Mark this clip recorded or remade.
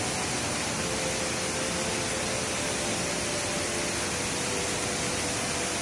recorded